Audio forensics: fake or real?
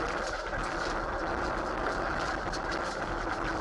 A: real